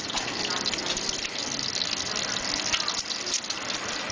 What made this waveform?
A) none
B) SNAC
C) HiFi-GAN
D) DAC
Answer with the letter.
A